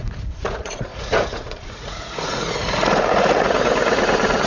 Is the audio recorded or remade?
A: remade